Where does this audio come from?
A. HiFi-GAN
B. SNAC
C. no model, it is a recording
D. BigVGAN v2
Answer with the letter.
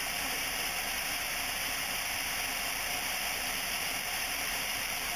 D